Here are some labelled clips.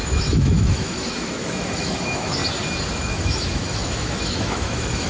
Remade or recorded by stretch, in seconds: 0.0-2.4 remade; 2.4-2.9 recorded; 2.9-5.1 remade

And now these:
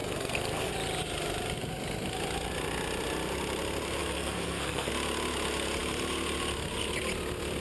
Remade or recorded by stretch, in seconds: 0.0-0.7 remade; 0.7-4.0 recorded; 4.0-4.9 remade; 4.9-7.6 recorded